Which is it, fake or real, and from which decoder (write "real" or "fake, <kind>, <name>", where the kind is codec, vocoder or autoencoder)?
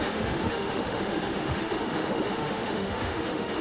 fake, autoencoder, DAC-VAE